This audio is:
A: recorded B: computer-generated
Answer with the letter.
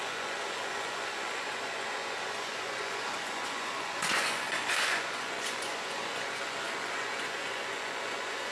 B